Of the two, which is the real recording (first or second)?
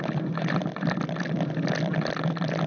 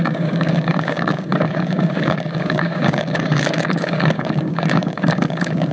first